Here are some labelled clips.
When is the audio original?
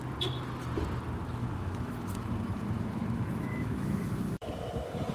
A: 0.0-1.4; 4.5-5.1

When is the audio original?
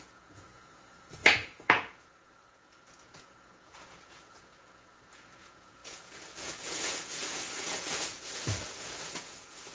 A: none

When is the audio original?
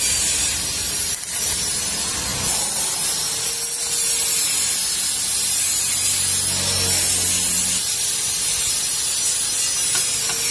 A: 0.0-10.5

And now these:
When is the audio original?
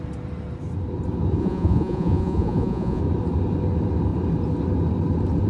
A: 0.0-1.4; 3.0-5.5